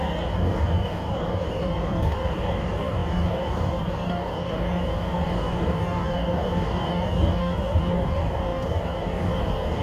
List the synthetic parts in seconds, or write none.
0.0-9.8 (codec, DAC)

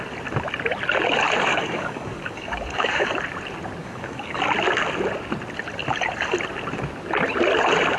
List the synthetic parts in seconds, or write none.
1.5-3.1 (codec, DAC); 3.8-4.4

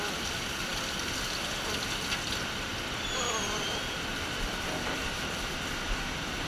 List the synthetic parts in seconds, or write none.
none

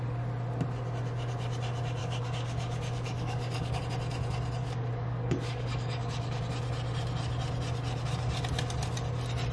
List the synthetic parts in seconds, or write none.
2.0-3.8 (codec, DAC); 4.6-6.4

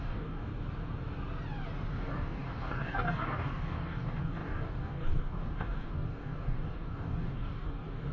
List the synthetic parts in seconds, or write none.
0.0-0.5 (codec, DAC); 1.9-8.1